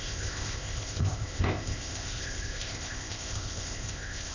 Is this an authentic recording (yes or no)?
no